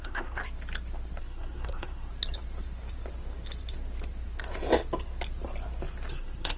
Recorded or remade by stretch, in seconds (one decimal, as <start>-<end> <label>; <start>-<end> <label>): 0.0-0.4 remade; 0.4-1.2 recorded; 1.2-2.1 remade; 2.1-6.1 recorded; 6.1-6.6 remade